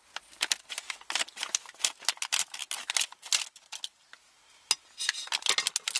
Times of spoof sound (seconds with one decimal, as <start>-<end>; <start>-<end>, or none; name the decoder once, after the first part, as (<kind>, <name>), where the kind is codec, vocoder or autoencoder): 2.6-3.3 (vocoder, BigVGAN v2)